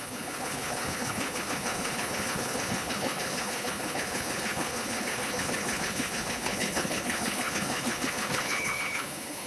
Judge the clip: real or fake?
fake